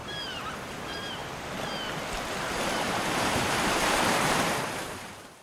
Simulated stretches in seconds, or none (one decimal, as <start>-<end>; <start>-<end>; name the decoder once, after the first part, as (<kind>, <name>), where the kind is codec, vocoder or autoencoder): 0.0-1.2 (vocoder, BigVGAN v2); 2.4-5.4